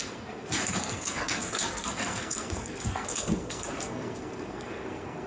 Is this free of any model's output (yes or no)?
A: no